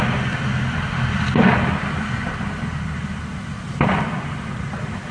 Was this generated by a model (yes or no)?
no